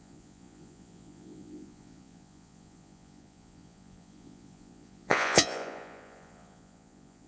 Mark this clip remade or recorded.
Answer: remade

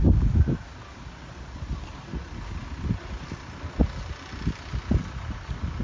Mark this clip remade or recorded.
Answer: recorded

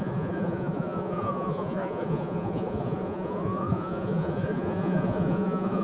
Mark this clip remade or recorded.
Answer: remade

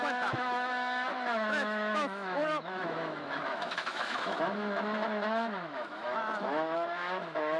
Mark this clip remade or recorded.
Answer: remade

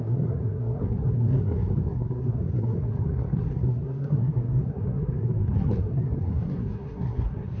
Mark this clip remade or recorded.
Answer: remade